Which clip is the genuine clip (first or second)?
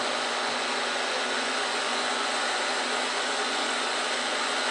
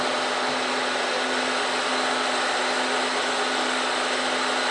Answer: second